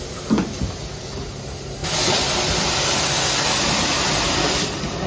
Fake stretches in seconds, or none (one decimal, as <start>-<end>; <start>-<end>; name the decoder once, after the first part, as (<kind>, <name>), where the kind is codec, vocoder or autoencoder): none

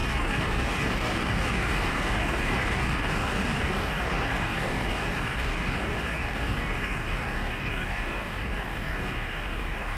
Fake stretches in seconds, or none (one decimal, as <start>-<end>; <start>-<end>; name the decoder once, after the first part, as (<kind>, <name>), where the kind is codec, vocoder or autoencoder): 0.0-10.0 (codec, DAC)

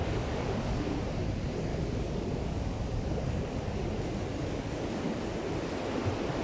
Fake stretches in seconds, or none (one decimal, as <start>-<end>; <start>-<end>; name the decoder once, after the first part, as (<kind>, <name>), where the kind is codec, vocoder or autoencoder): 0.0-0.6 (codec, DAC); 1.7-3.9; 4.3-5.2

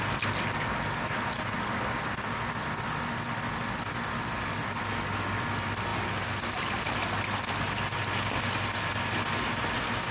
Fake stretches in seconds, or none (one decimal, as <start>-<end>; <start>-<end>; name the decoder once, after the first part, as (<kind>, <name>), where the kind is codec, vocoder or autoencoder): none

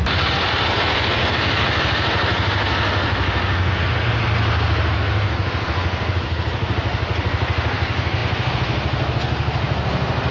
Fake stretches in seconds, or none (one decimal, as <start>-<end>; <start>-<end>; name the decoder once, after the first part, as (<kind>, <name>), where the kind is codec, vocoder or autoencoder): none

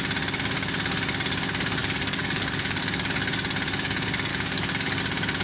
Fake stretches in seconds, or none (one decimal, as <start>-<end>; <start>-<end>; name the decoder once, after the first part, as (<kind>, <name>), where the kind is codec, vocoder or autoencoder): 1.8-3.1 (codec, DAC); 4.3-5.0